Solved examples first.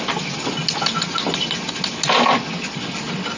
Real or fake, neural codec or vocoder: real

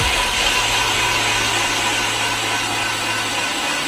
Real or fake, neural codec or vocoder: real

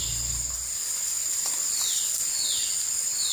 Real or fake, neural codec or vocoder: real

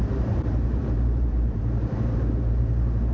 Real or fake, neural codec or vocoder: fake, vocoder, BigVGAN v2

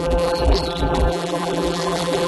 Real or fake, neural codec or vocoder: fake, vocoder, BigVGAN v2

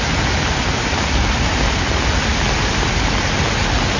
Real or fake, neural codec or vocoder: real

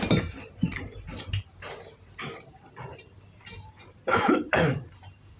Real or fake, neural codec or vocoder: fake, vocoder, BigVGAN v2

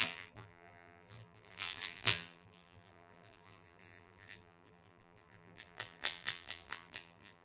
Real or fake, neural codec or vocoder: fake, vocoder, BigVGAN v2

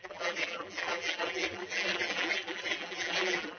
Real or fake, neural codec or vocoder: fake, vocoder, BigVGAN v2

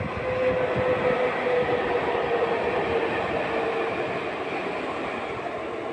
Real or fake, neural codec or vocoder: real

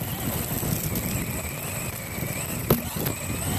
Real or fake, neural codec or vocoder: real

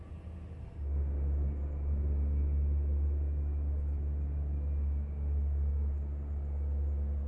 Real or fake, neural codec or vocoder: real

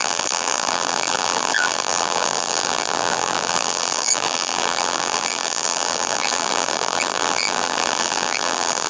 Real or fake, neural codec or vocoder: fake, vocoder, BigVGAN v2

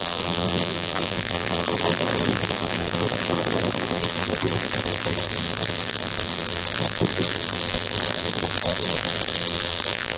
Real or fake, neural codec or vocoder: fake, vocoder, BigVGAN v2